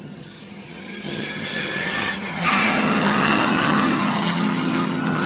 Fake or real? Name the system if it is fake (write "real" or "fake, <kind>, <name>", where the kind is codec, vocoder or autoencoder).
fake, vocoder, HiFi-GAN